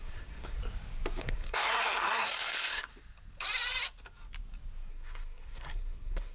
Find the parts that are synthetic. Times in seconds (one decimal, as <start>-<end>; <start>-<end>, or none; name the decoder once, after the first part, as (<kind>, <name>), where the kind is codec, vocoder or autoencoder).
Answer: 0.0-0.6 (codec, SNAC); 1.2-2.9; 4.9-6.3